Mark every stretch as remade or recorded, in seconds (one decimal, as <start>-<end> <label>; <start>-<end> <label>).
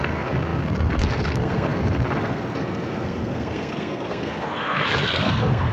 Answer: 0.0-5.7 remade